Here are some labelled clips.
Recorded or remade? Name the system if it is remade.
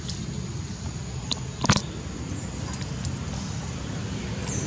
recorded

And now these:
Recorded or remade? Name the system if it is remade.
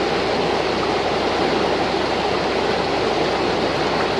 recorded